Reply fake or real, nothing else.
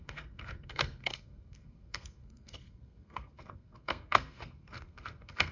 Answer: fake